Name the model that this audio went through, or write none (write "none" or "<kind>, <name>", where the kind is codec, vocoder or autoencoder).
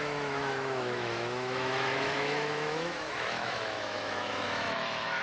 autoencoder, DAC-VAE